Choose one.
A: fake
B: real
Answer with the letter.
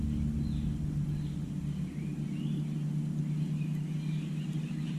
B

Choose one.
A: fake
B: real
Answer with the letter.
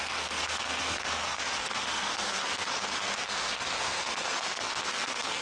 A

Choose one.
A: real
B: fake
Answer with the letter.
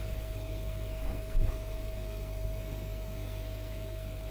B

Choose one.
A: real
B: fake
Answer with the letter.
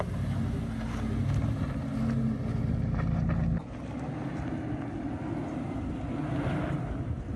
A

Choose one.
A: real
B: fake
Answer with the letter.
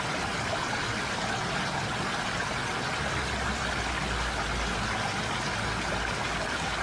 A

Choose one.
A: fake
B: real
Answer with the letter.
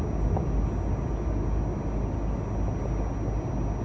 B